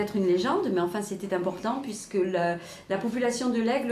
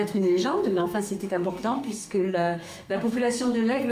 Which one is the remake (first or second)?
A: second